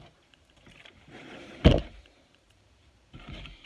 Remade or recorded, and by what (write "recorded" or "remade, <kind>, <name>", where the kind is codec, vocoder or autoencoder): remade, vocoder, BigVGAN v2